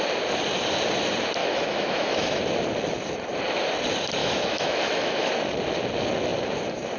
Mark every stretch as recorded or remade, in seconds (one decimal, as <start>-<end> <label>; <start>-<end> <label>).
0.0-1.4 recorded; 1.4-2.4 remade; 2.4-4.2 recorded; 4.2-5.3 remade; 5.3-7.0 recorded